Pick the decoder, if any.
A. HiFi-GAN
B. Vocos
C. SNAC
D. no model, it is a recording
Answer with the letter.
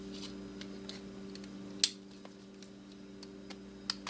D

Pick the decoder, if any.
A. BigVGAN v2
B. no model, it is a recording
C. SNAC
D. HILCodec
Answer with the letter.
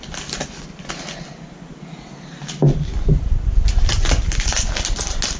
B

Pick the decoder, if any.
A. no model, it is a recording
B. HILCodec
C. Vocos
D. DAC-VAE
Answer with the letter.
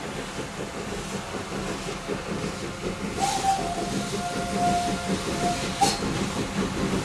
A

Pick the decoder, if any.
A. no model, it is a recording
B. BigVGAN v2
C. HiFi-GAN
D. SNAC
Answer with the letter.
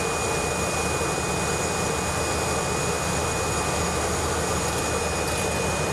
A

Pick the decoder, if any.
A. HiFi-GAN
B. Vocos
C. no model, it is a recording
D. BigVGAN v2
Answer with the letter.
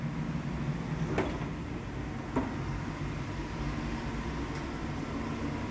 C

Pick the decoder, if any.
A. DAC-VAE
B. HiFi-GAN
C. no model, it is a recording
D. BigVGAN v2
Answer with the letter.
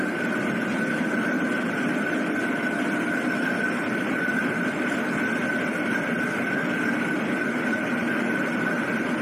D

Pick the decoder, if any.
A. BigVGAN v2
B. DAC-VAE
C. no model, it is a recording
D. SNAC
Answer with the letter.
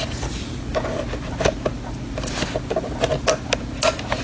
C